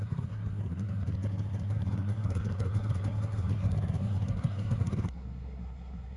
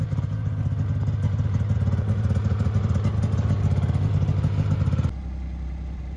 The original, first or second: second